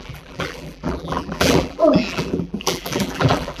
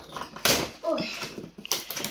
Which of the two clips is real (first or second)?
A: second